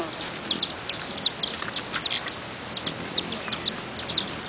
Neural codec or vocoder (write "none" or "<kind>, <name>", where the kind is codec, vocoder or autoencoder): none